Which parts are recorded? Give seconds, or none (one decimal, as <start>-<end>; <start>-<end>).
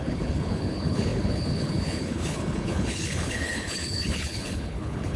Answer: none